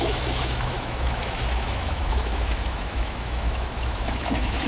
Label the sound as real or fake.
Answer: fake